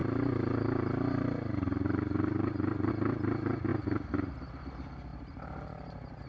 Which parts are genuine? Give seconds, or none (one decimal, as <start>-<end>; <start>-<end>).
2.9-5.1